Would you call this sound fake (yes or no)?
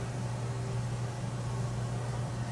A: no